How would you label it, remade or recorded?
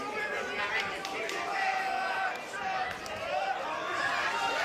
remade